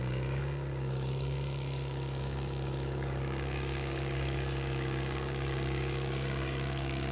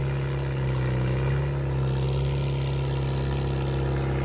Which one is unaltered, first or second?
second